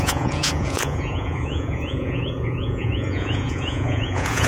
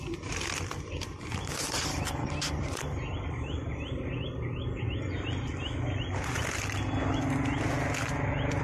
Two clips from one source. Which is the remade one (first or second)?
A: first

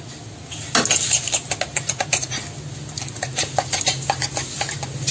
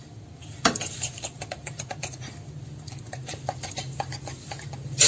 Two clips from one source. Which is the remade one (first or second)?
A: second